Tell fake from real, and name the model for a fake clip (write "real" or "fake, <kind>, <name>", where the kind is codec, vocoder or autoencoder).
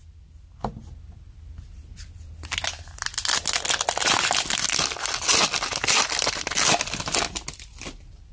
real